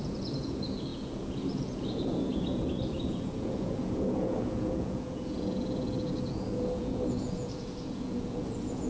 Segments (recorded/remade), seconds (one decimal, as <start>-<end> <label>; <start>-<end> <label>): 0.0-8.9 remade